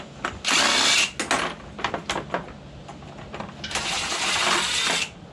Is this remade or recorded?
recorded